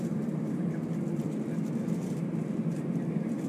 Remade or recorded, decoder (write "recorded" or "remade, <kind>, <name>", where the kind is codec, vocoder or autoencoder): recorded